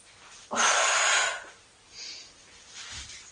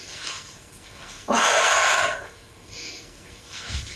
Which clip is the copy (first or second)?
second